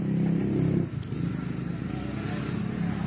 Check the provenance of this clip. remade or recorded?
recorded